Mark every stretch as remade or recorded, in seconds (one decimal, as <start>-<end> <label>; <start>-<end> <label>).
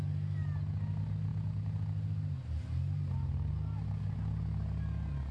0.0-5.3 recorded